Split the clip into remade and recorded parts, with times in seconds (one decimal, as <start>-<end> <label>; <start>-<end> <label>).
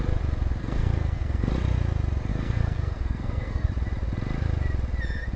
0.0-0.6 recorded; 0.6-1.5 remade; 1.5-2.3 recorded; 2.3-3.7 remade; 3.7-5.4 recorded